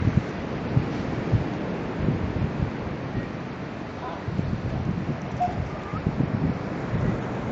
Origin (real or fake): real